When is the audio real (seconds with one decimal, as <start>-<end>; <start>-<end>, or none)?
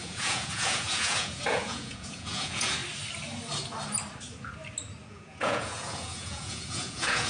2.8-5.1